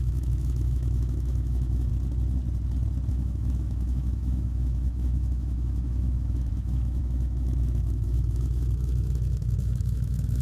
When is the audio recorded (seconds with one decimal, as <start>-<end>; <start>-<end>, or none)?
1.9-3.1